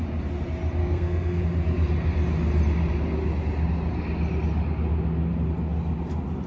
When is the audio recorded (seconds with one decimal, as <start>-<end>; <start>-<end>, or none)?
0.0-0.8; 1.4-6.5